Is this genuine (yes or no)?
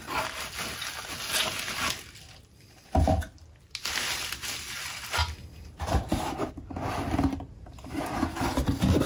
yes